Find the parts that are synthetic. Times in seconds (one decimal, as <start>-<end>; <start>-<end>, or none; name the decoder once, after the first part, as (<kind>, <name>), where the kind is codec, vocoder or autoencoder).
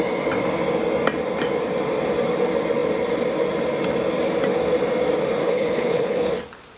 5.4-6.3 (codec, HILCodec)